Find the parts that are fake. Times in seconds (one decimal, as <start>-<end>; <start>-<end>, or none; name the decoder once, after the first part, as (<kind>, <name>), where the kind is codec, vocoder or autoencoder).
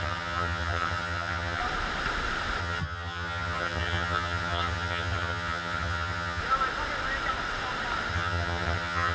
0.0-1.6 (vocoder, HiFi-GAN); 2.6-6.4; 8.1-9.1